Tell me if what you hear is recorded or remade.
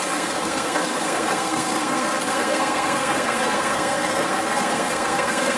remade